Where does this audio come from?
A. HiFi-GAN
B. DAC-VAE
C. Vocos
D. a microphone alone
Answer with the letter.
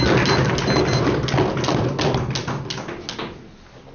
D